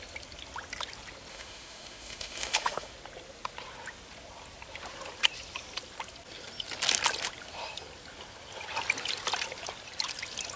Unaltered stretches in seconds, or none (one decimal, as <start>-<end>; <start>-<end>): 0.0-1.3; 2.9-10.6